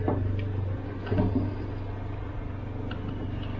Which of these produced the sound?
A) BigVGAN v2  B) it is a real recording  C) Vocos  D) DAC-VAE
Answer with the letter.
B